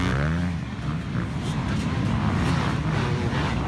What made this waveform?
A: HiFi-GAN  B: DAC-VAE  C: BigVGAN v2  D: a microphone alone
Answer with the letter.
D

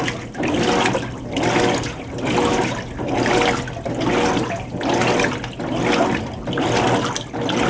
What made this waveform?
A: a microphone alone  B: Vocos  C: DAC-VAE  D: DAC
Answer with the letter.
A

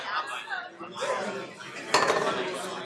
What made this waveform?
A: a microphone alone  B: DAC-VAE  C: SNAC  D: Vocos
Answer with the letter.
A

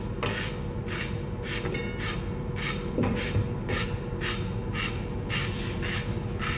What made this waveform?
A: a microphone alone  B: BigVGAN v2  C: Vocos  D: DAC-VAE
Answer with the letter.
A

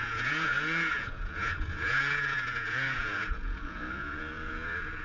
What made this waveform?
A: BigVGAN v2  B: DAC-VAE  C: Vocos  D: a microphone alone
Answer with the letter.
C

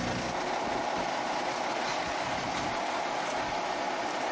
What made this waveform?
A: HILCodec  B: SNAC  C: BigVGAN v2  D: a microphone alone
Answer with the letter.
D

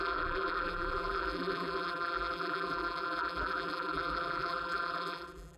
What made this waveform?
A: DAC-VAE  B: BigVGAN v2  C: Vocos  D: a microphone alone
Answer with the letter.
B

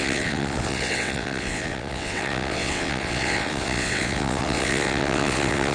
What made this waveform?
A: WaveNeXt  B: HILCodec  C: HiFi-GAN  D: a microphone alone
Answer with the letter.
A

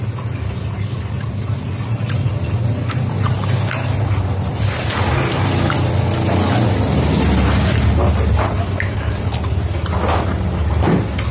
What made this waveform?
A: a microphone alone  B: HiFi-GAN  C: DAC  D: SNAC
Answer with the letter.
A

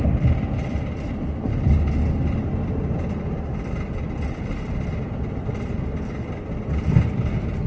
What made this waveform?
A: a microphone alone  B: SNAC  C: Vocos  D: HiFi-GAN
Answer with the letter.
A